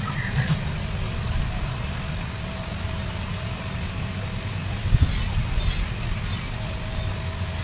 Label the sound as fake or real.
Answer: real